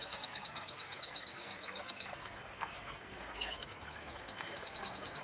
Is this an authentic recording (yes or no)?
no